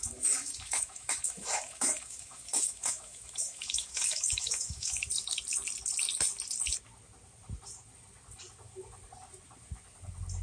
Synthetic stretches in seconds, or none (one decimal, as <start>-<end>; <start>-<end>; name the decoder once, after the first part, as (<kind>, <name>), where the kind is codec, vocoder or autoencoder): 0.0-5.1 (autoencoder, DAC-VAE)